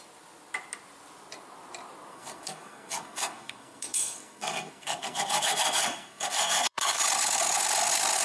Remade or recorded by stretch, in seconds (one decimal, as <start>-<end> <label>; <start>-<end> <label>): 0.0-2.1 recorded; 2.1-7.0 remade; 7.0-8.2 recorded